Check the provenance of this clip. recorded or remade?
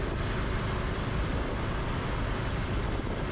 recorded